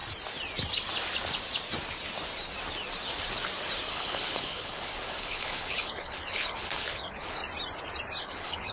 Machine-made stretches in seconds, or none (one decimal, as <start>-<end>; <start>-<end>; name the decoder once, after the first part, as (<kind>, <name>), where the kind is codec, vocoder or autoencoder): 3.9-7.4 (codec, HILCodec); 8.2-8.7